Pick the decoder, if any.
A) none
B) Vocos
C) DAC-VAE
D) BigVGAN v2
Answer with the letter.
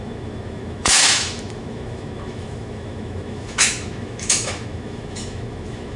C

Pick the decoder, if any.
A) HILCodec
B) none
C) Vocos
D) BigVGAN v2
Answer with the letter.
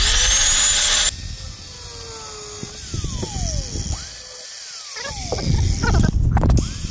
B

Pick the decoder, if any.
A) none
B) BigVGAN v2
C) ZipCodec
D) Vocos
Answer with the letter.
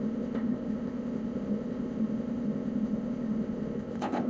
C